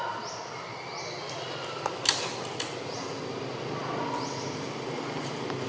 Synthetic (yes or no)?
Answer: no